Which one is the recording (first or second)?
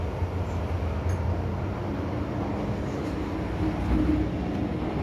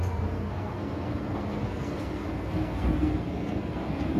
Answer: first